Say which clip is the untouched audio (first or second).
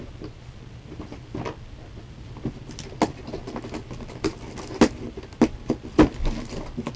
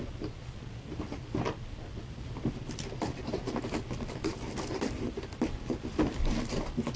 first